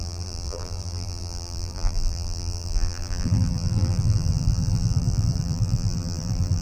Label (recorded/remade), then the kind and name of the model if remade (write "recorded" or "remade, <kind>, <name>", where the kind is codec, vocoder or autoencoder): remade, vocoder, BigVGAN v2